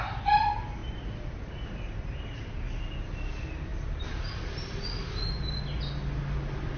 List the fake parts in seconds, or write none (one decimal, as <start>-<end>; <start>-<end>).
none